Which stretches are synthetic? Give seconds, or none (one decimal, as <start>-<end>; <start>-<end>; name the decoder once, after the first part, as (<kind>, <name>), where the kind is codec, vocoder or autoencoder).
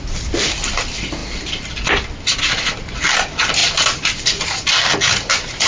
none